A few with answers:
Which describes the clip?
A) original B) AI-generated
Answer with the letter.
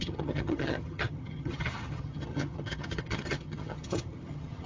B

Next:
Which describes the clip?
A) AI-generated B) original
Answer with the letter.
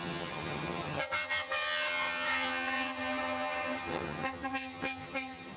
A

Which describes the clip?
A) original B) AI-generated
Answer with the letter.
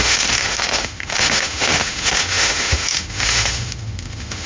B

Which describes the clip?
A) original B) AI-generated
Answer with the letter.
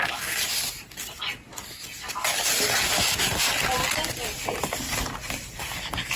A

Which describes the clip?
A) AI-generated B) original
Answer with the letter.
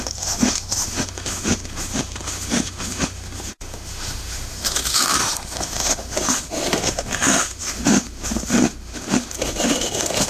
A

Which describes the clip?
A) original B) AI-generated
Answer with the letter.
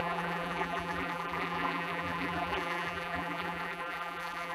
B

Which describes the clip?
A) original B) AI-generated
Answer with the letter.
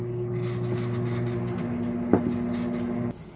A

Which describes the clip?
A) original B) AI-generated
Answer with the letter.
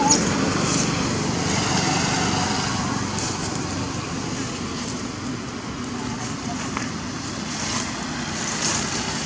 A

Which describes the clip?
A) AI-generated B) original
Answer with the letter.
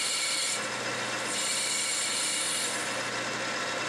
B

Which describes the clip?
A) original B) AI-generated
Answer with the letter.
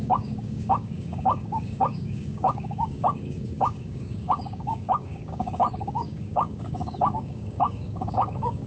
B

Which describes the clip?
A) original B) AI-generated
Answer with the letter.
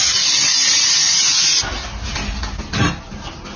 A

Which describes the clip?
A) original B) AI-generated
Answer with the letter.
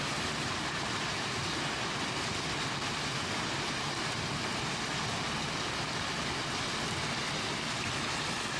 A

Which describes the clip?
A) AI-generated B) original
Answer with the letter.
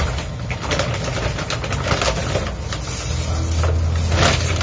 B